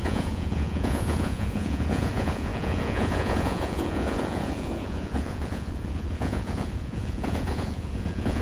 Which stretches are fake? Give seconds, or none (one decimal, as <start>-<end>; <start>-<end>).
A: 0.0-8.4